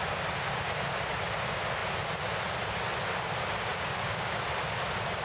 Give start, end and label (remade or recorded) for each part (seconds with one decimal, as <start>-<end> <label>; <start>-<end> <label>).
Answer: 0.0-3.7 recorded; 3.7-4.4 remade; 4.4-5.2 recorded